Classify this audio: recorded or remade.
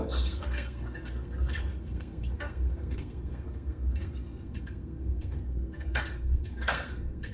remade